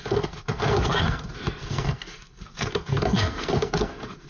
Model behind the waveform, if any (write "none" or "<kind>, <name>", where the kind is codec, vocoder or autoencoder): codec, SNAC